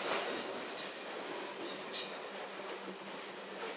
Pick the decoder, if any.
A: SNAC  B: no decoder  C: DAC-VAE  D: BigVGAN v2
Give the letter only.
B